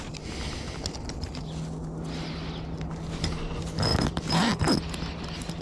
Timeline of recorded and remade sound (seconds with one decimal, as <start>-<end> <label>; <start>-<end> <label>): 0.0-3.9 recorded; 3.9-4.7 remade; 4.7-5.6 recorded